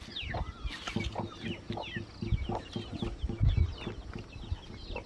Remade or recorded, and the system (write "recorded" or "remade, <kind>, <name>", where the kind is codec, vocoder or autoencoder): recorded